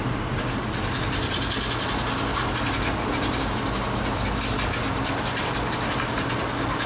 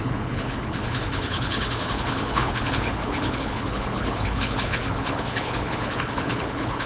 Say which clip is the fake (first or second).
second